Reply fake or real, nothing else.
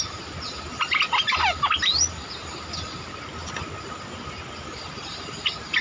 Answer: real